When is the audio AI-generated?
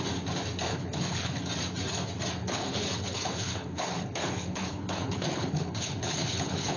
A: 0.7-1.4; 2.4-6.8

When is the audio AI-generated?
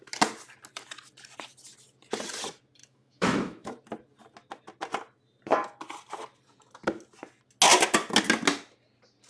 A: 2.8-3.7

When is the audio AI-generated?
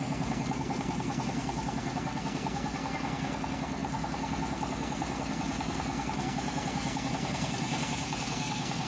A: 0.0-8.9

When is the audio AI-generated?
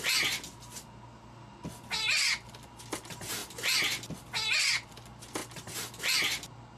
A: none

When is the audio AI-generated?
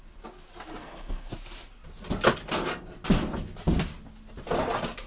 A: 0.8-1.3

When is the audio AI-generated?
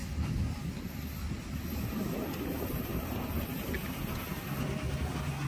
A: none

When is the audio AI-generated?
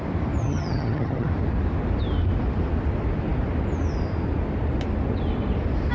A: 0.4-1.3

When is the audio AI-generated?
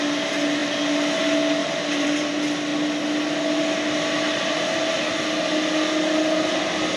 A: 1.6-2.3